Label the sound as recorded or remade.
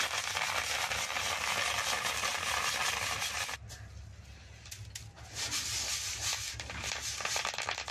recorded